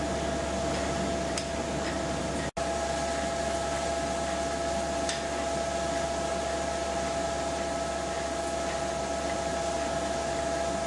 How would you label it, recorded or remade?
recorded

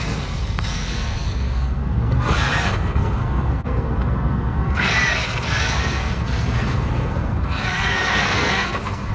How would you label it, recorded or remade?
remade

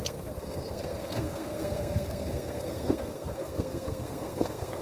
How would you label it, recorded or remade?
remade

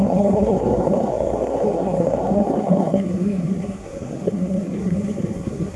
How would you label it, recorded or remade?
remade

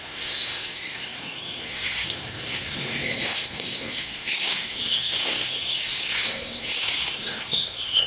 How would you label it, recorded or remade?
remade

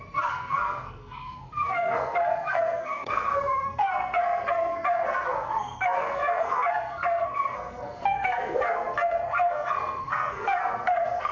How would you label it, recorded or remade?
remade